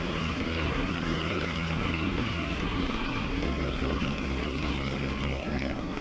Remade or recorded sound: remade